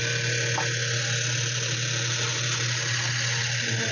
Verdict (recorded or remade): recorded